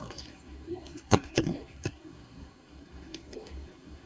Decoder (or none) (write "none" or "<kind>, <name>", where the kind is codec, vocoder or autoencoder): codec, SNAC